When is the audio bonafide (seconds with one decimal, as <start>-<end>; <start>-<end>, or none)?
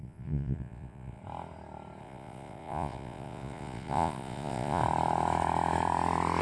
1.2-2.0; 4.8-6.4